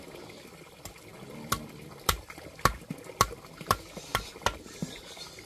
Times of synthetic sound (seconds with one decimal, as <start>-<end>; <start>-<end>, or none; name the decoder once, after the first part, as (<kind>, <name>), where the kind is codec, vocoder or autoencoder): none